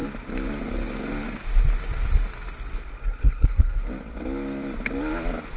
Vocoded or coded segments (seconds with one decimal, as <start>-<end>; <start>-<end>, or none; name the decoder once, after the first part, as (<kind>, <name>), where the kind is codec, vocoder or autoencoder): 3.0-3.9 (codec, SNAC)